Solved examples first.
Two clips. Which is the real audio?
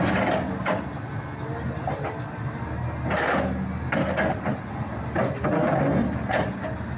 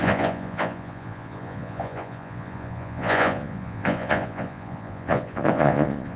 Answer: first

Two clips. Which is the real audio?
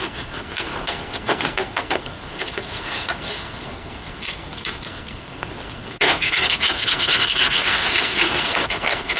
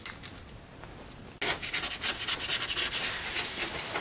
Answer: second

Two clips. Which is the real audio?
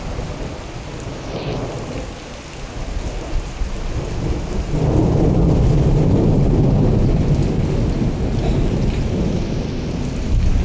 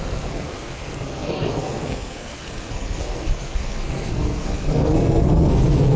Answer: first